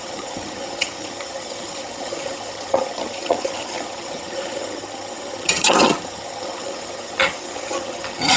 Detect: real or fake fake